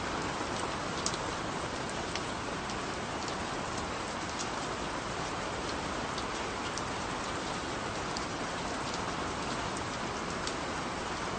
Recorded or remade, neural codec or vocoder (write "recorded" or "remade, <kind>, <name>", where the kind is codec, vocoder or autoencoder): recorded